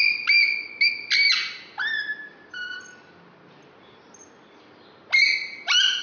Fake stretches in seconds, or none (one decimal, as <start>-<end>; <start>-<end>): none